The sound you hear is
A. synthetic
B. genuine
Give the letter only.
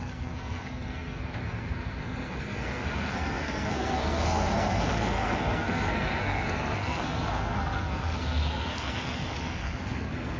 A